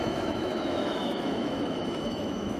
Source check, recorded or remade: remade